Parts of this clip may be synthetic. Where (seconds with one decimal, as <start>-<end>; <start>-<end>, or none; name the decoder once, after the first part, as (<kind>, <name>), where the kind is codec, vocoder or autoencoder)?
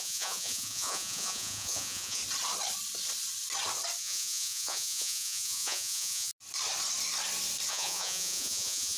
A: 0.0-2.2 (vocoder, Vocos); 4.0-6.3; 7.7-9.0